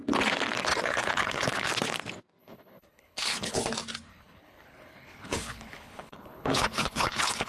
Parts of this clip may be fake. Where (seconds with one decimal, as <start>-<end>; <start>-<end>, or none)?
0.7-1.7; 2.4-3.6; 4.1-7.5

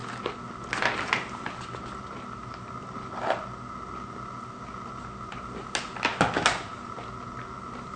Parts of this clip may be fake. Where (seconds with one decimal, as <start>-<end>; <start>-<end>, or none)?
none

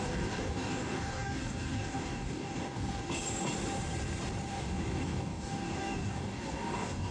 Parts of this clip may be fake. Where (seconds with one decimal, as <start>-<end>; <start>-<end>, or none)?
0.0-3.0; 4.5-7.1

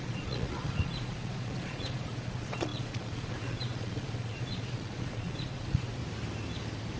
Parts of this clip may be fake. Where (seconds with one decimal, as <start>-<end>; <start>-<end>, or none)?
0.0-6.0